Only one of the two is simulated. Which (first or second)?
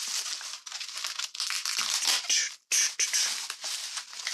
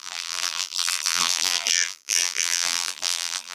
second